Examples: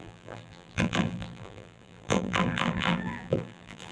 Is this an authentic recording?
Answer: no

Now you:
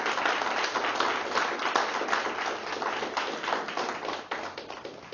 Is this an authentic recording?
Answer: yes